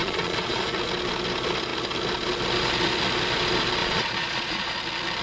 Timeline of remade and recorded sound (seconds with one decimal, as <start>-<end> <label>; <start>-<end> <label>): 0.0-0.6 remade; 0.6-3.8 recorded; 3.8-4.8 remade; 4.8-5.2 recorded